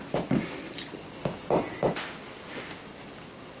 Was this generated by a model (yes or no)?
no